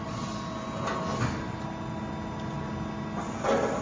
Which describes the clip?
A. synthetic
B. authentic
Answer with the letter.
B